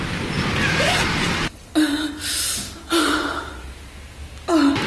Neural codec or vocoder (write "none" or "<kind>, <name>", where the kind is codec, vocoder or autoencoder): none